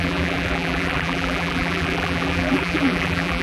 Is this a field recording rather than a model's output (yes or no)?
no